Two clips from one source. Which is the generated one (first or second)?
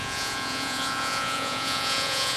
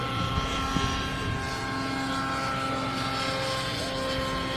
first